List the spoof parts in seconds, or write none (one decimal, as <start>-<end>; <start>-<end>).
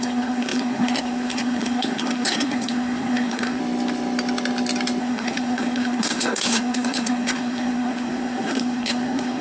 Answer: 0.0-3.6; 5.0-9.4